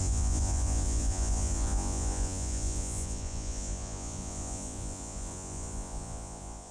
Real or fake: fake